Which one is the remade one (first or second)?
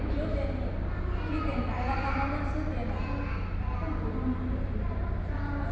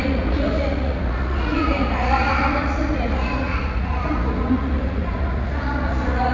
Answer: second